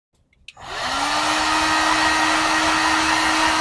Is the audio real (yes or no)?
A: yes